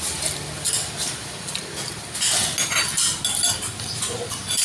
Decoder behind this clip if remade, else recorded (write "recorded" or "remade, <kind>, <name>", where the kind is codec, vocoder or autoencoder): recorded